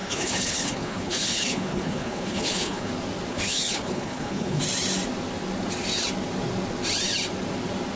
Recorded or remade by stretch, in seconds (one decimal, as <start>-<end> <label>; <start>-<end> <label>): 0.0-2.9 remade; 2.9-3.3 recorded; 3.3-4.6 remade; 4.6-8.0 recorded